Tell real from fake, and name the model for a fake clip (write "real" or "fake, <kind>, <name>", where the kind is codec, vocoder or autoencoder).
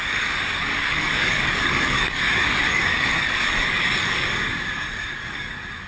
fake, codec, DAC